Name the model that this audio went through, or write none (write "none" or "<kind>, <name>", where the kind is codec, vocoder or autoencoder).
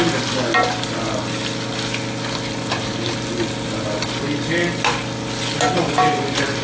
none